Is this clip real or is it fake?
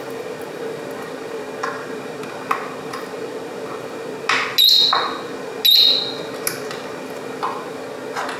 real